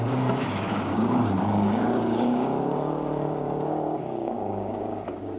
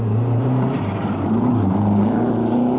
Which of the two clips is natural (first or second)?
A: second